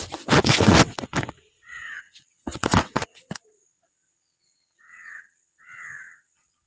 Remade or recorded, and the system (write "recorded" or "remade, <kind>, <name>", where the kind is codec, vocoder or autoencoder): remade, vocoder, WaveNeXt